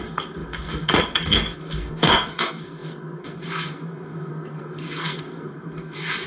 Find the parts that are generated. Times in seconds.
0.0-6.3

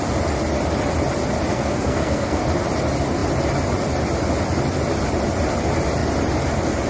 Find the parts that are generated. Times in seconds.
1.5-2.4

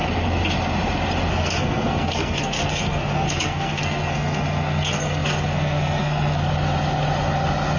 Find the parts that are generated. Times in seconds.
1.3-6.4